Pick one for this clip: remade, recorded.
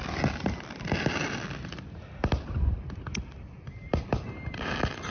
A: recorded